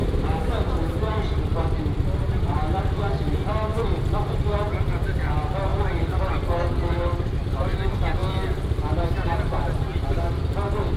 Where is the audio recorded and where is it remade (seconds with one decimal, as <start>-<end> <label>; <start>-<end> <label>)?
0.0-0.5 remade; 0.5-3.7 recorded; 3.7-4.4 remade; 4.4-8.2 recorded; 8.2-9.0 remade; 9.0-11.0 recorded